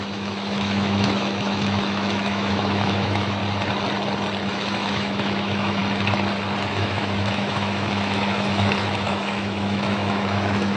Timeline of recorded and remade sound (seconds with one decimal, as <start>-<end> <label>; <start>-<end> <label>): 0.0-3.4 remade; 3.4-4.5 recorded; 4.5-5.8 remade; 5.8-6.7 recorded; 6.7-10.8 remade